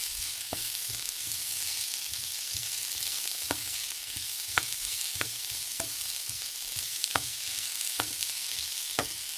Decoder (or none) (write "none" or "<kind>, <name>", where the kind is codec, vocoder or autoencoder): codec, SNAC